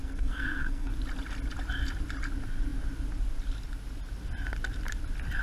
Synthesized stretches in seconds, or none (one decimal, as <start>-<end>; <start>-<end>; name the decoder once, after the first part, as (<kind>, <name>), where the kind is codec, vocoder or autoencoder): 0.0-0.9 (codec, SNAC)